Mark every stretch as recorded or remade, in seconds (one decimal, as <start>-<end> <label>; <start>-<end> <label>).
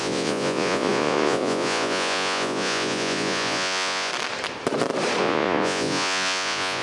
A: 0.0-4.1 remade; 4.1-5.2 recorded; 5.2-6.8 remade